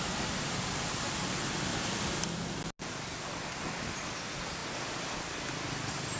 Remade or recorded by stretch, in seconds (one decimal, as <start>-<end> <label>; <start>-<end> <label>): 0.0-6.2 recorded